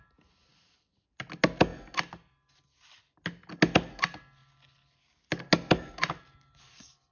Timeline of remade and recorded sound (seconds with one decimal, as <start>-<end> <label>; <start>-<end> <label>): 0.0-7.1 recorded